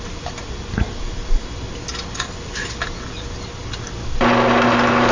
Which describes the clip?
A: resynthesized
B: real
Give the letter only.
B